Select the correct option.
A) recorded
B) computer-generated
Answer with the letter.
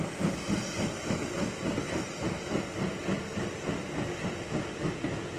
A